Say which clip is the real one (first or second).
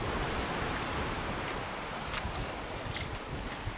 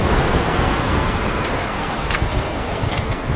first